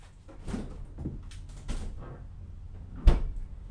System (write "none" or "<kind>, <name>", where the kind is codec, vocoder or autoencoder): none